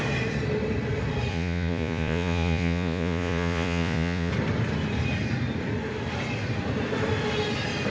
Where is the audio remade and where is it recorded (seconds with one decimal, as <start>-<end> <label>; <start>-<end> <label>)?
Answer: 0.0-1.3 recorded; 1.3-4.3 remade; 4.3-7.9 recorded